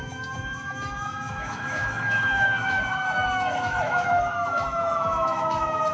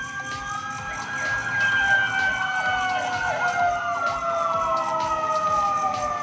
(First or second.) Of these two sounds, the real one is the second